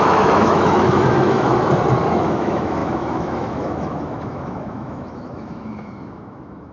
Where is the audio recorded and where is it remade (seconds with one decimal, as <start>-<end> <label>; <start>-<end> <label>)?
0.0-1.5 remade; 1.5-2.1 recorded; 2.1-6.7 remade